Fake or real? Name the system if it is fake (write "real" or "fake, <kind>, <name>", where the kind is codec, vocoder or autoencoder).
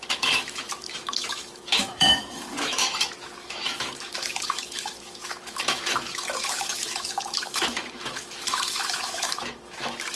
fake, autoencoder, DAC-VAE